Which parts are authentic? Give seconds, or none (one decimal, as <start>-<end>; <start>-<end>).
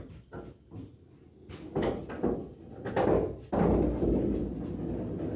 0.0-5.4